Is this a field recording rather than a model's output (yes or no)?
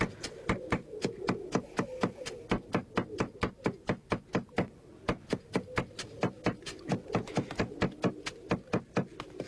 yes